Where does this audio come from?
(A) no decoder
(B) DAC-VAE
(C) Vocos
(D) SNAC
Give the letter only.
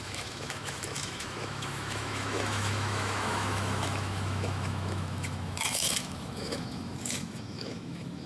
B